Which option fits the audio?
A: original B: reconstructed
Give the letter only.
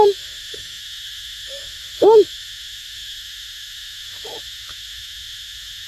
B